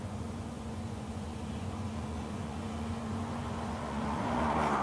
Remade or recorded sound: remade